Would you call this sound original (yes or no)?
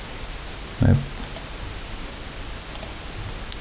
yes